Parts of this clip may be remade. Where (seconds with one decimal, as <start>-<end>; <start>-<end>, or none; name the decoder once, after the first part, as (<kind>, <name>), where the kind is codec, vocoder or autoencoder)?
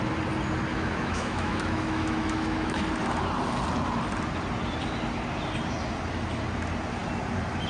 0.7-2.8 (autoencoder, DAC-VAE)